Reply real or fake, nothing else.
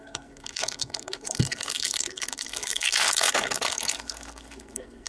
fake